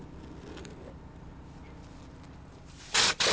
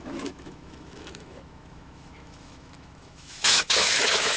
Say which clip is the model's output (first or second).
second